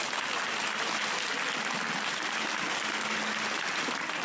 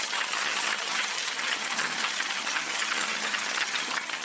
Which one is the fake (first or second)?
second